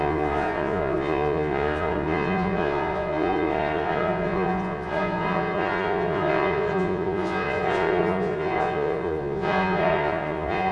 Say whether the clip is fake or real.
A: fake